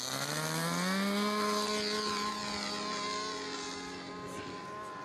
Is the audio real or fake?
real